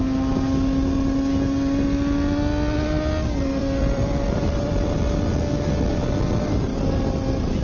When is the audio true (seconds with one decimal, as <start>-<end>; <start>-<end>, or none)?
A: 0.0-3.6; 5.4-7.6